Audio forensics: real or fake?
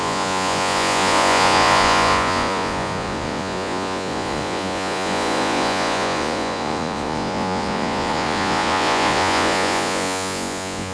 fake